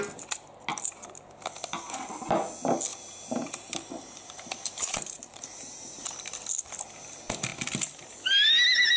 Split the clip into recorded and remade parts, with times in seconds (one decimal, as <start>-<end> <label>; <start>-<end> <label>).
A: 0.0-2.9 recorded; 2.9-6.2 remade; 6.2-7.5 recorded; 7.5-8.1 remade; 8.1-9.0 recorded